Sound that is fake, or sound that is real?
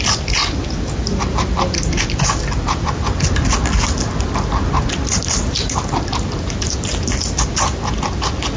real